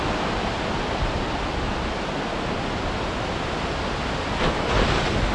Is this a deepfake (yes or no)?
no